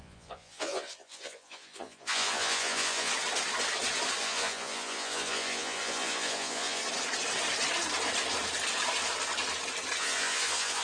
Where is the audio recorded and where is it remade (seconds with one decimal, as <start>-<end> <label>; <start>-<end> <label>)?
0.0-3.1 remade; 3.1-4.2 recorded; 4.2-6.8 remade; 6.8-10.0 recorded; 10.0-10.8 remade